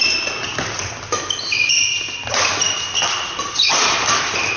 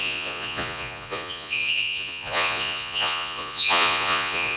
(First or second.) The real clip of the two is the first